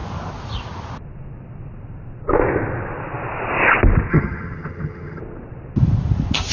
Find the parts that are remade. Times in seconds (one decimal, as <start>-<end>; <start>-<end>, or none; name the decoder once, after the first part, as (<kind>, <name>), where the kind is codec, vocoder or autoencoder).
4.1-5.2 (vocoder, HiFi-GAN)